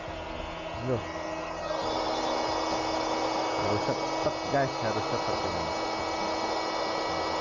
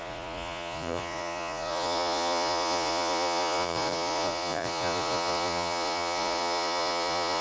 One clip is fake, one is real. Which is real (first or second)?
first